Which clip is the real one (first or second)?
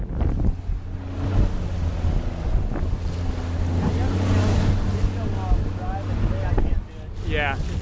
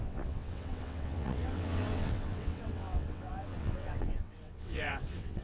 first